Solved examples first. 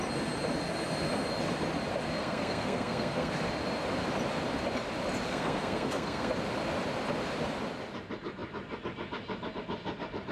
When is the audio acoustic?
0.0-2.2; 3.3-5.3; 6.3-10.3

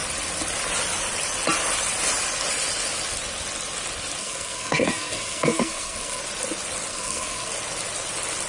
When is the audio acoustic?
0.0-4.2; 6.2-6.9; 7.5-8.5

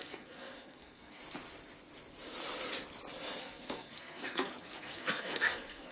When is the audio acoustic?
1.2-3.4

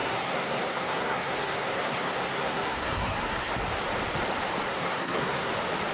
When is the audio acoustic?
3.5-4.7; 5.5-5.9

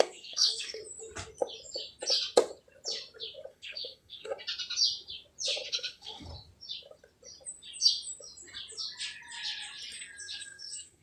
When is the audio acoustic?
0.8-3.5; 4.3-5.7; 6.3-10.2

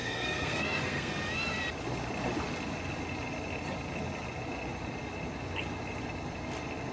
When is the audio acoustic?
1.1-6.9

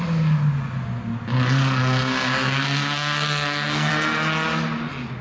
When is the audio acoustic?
0.0-1.8; 3.9-5.2

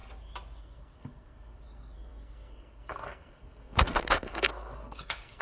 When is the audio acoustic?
0.0-0.6